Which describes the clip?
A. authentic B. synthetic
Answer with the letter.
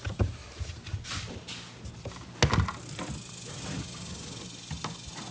A